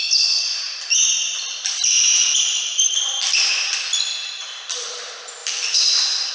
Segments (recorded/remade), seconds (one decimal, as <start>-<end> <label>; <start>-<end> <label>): 0.0-1.1 recorded; 1.1-3.3 remade; 3.3-5.4 recorded; 5.4-6.3 remade